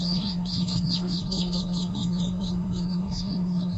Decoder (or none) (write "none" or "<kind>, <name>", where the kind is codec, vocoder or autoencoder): codec, SNAC